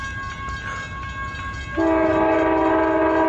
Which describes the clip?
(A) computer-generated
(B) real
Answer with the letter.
B